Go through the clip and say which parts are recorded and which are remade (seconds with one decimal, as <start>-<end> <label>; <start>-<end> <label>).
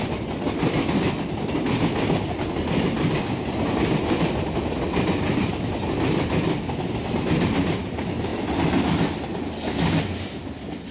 0.0-10.9 recorded